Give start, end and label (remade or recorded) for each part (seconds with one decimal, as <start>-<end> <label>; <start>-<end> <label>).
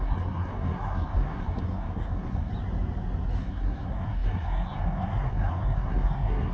0.0-2.5 remade; 2.5-3.4 recorded; 3.4-6.5 remade